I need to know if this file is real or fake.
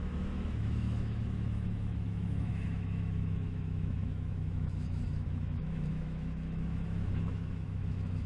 fake